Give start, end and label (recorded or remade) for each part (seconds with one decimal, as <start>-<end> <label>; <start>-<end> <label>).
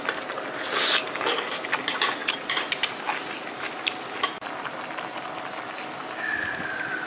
0.0-7.1 recorded